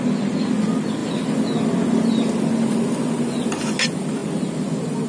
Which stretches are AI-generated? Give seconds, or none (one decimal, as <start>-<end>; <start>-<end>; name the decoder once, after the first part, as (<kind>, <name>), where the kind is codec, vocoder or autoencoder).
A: none